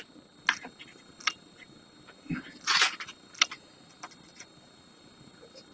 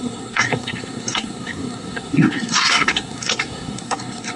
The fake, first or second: second